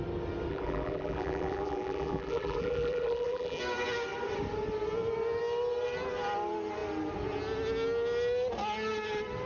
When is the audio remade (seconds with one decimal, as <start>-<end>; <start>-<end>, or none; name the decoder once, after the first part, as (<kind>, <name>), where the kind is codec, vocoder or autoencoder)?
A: 0.5-3.6 (vocoder, BigVGAN v2)